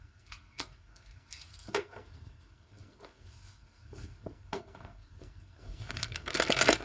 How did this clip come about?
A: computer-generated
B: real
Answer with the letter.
A